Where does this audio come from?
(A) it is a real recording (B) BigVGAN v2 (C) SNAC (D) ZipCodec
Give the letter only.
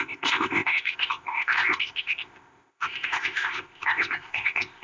D